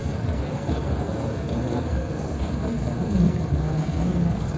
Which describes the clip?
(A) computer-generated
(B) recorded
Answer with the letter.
A